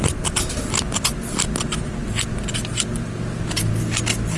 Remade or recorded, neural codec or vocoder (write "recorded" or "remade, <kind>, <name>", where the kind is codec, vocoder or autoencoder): recorded